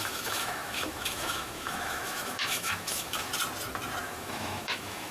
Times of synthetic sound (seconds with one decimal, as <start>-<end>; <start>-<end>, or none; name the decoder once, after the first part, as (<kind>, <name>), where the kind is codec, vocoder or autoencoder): 0.0-3.3 (autoencoder, DAC-VAE); 4.0-5.1

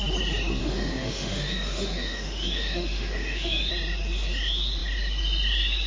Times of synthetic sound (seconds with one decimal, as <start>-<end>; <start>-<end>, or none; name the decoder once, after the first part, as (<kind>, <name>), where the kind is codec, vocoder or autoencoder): 0.6-3.7 (autoencoder, DAC-VAE)

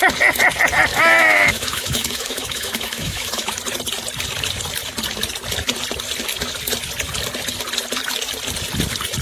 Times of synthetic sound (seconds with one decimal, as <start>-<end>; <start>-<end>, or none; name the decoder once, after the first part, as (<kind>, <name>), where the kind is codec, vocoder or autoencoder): 0.9-3.6 (autoencoder, DAC-VAE)

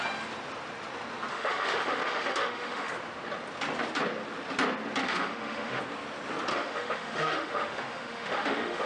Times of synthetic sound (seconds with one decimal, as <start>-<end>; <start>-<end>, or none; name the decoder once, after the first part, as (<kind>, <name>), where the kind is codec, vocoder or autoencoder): 1.3-2.9 (autoencoder, DAC-VAE); 5.0-5.8; 6.5-8.9

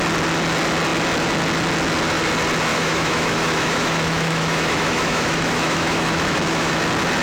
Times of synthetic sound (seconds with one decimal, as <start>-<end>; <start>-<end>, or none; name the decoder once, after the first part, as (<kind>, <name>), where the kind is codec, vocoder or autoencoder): 2.7-6.8 (autoencoder, DAC-VAE)